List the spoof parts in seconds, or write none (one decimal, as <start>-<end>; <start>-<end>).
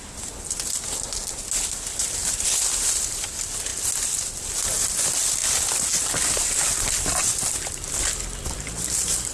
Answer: none